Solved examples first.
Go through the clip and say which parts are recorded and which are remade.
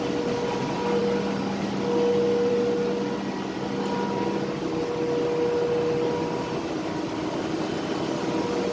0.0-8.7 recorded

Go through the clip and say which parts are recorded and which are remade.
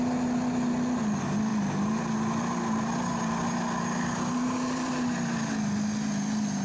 0.0-6.6 recorded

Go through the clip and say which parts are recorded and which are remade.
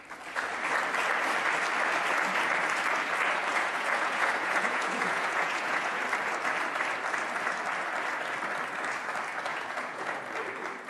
0.0-3.5 recorded; 3.5-6.0 remade; 6.0-9.5 recorded; 9.5-10.2 remade; 10.2-10.9 recorded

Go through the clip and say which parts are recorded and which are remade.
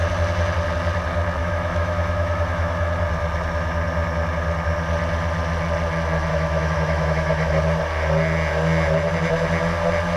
0.0-1.4 recorded; 1.4-2.9 remade; 2.9-6.3 recorded; 6.3-7.6 remade; 7.6-10.2 recorded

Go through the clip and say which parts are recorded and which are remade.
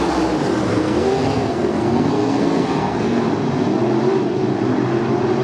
0.0-0.7 recorded; 0.7-3.2 remade; 3.2-5.4 recorded